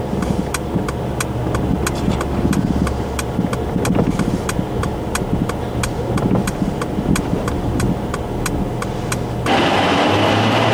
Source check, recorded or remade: recorded